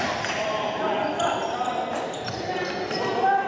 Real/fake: real